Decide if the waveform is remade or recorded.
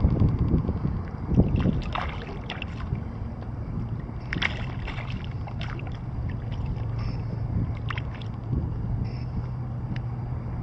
recorded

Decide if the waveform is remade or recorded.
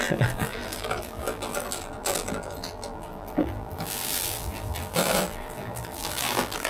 remade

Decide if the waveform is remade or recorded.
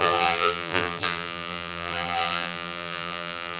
remade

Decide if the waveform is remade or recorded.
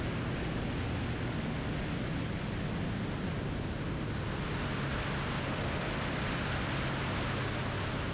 recorded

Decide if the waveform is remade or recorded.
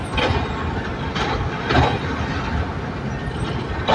recorded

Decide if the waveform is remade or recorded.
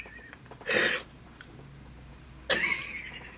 recorded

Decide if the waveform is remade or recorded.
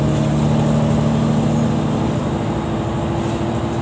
recorded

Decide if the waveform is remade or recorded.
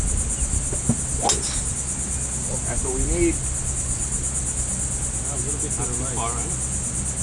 recorded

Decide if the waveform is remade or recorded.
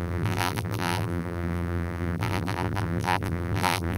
remade